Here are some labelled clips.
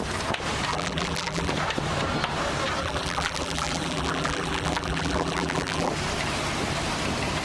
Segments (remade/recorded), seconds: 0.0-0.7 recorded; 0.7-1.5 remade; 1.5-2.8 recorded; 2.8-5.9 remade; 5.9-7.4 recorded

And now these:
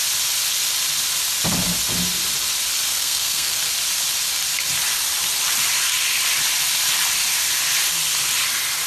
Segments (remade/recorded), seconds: 0.0-2.9 recorded; 2.9-3.6 remade; 3.6-8.9 recorded

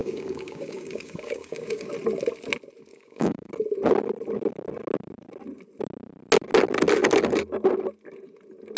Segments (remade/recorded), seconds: 0.0-1.9 remade; 1.9-2.9 recorded; 2.9-3.5 remade; 3.5-8.8 recorded

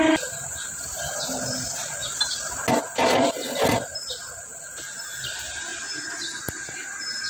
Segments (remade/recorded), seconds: 0.0-7.3 recorded

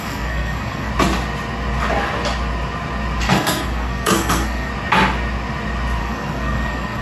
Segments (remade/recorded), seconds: 0.0-0.9 remade; 0.9-3.2 recorded; 3.2-4.7 remade; 4.7-6.0 recorded; 6.0-7.0 remade

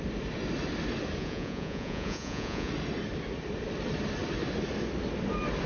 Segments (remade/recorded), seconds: 0.0-1.2 recorded; 1.2-2.7 remade; 2.7-5.7 recorded

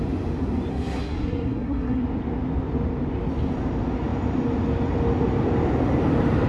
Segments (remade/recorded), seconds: 0.0-0.7 recorded; 0.7-2.0 remade; 2.0-6.5 recorded

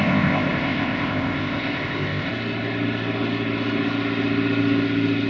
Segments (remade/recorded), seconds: 0.0-2.3 remade; 2.3-5.3 recorded